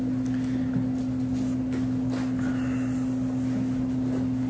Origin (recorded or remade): recorded